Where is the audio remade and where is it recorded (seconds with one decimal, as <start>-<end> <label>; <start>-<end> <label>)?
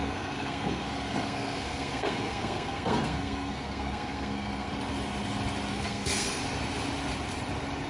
0.0-4.7 remade; 4.7-5.7 recorded; 5.7-6.4 remade; 6.4-7.9 recorded